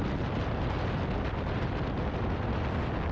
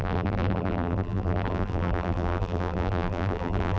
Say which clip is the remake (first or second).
second